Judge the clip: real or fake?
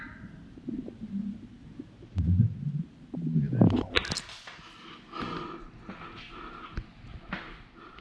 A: real